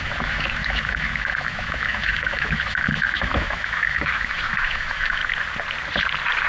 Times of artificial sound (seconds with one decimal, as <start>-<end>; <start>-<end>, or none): 0.0-5.2